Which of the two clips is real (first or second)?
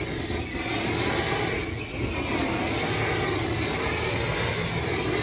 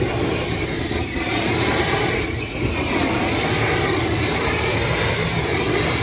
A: first